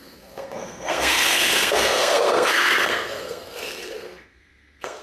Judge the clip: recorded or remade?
remade